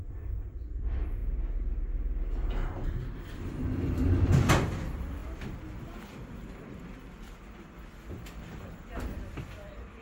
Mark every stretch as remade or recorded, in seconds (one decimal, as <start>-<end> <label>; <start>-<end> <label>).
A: 0.0-1.2 remade; 1.2-4.5 recorded; 4.5-10.0 remade